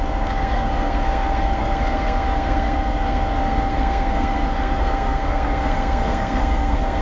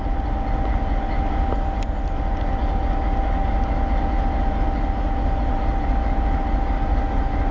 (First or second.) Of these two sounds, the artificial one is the first